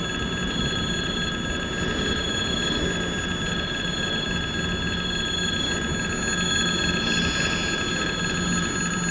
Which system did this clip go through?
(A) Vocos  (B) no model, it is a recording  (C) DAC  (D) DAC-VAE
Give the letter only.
B